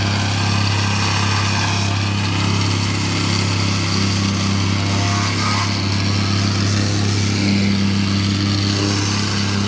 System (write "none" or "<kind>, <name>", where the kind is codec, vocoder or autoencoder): none